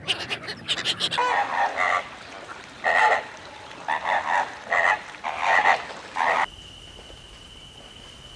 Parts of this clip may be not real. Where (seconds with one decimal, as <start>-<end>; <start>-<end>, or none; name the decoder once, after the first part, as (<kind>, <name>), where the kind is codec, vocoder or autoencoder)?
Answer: none